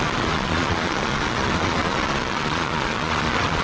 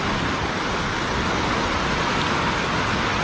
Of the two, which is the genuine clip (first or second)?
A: second